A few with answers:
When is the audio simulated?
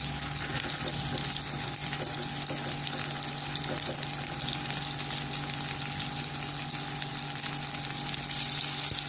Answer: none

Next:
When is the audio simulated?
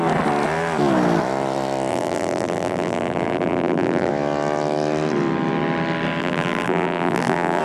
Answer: 1.9-4.1 (vocoder, BigVGAN v2); 6.2-7.6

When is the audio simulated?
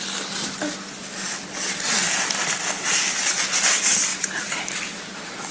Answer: 4.1-4.6 (vocoder, Vocos)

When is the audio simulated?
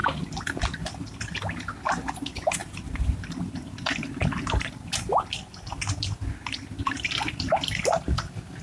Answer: none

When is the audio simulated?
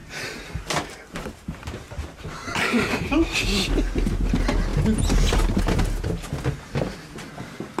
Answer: none